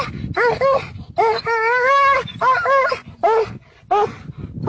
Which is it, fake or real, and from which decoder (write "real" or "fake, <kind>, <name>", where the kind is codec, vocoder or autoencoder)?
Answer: real